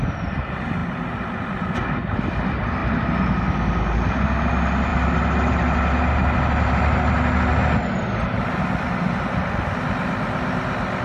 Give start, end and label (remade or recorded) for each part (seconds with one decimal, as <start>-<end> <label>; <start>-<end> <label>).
0.0-11.0 recorded